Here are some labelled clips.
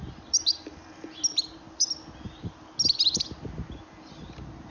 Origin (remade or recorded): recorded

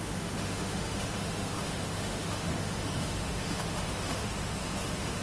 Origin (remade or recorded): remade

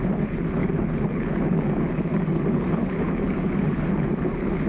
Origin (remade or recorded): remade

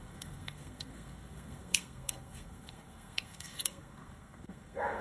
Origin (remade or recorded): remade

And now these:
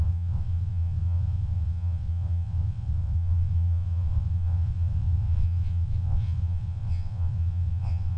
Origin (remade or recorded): remade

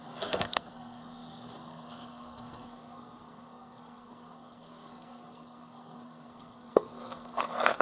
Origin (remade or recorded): remade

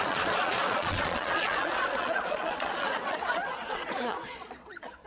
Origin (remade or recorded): remade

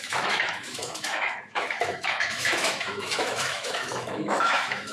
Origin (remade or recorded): remade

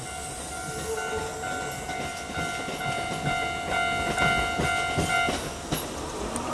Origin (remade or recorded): recorded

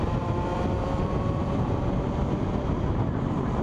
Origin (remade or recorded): remade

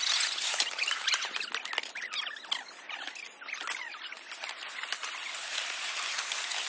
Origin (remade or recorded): recorded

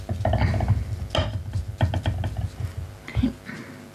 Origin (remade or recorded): recorded